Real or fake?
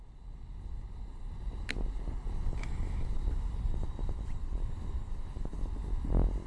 real